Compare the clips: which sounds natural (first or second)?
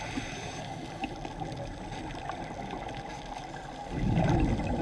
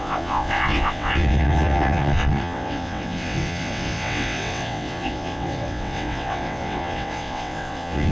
first